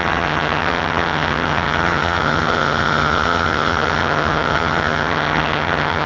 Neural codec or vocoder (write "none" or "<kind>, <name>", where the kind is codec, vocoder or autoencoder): vocoder, HiFi-GAN